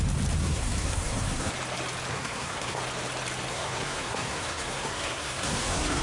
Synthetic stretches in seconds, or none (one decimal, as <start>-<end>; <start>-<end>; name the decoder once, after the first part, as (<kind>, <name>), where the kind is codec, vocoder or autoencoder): 0.4-1.5 (codec, SNAC); 2.1-2.8; 3.5-6.0